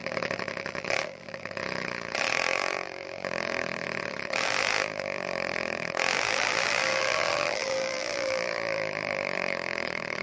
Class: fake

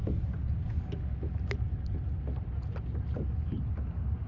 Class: real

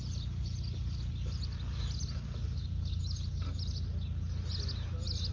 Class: real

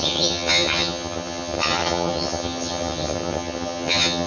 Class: fake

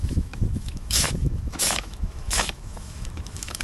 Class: fake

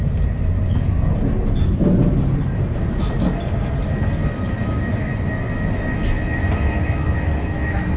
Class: real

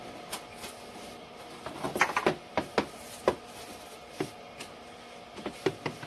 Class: real